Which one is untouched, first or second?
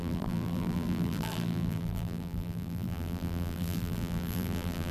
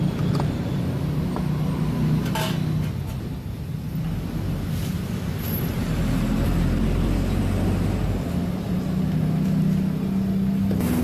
second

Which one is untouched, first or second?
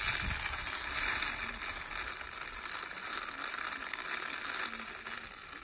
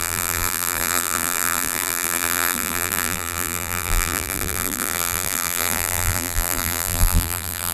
first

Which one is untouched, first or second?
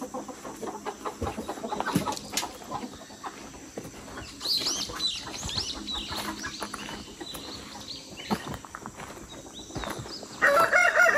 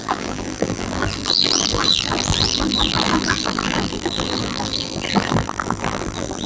first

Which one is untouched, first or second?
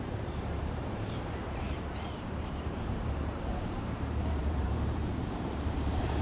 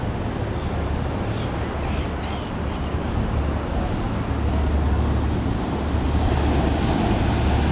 second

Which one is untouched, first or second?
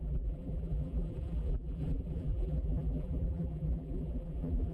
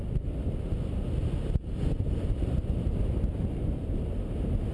second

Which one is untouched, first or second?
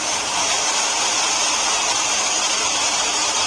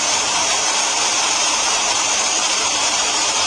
first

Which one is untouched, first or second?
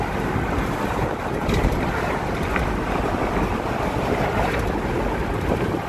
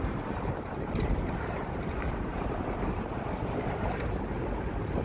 first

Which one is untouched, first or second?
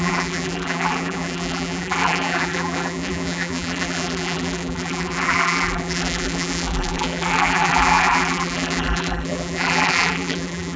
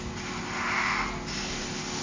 second